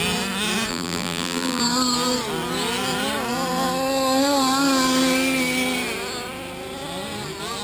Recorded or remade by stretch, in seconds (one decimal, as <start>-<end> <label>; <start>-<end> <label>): 0.0-0.7 recorded; 0.7-1.6 remade; 1.6-7.6 recorded